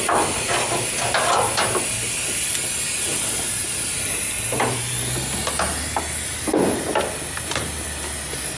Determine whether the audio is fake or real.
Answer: real